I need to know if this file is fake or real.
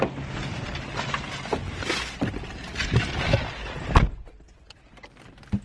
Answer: real